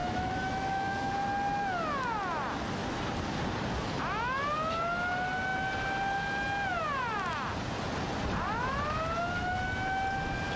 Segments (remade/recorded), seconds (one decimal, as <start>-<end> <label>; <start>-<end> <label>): 0.0-1.1 remade; 1.1-10.6 recorded